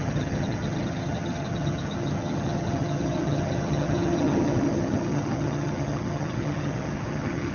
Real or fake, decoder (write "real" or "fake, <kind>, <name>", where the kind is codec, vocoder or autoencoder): fake, vocoder, HiFi-GAN